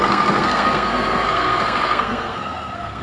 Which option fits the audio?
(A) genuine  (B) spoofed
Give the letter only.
B